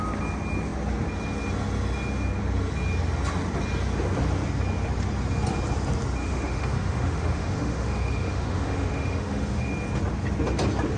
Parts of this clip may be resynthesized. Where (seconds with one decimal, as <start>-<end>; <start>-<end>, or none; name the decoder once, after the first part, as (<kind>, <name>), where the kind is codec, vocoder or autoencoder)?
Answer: 6.2-9.7 (autoencoder, DAC-VAE)